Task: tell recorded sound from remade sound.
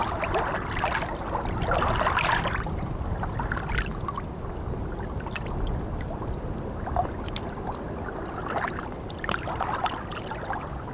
recorded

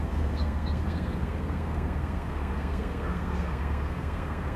remade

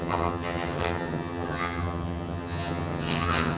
remade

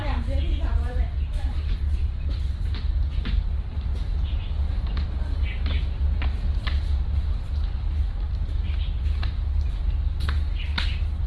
recorded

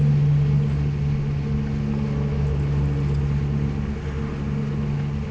recorded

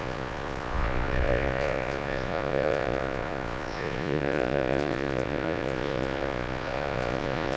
remade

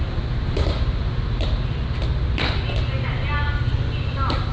recorded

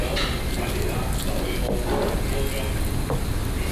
recorded